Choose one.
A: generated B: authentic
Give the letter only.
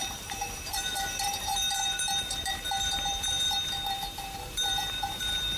A